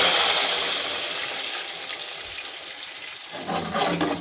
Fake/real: real